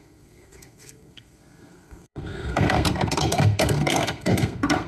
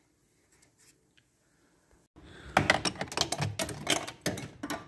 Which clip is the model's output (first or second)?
first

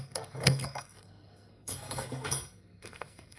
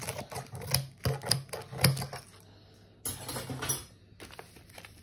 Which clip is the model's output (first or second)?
first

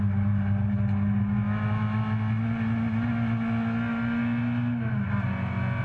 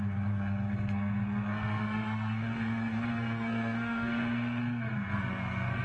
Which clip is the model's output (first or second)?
second